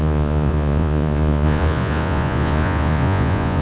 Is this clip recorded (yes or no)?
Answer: no